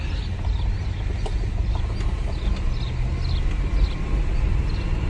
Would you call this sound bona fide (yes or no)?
yes